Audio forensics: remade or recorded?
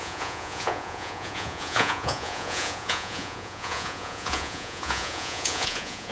remade